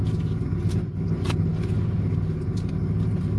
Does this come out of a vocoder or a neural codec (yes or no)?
no